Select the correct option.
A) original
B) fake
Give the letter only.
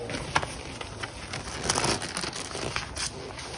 A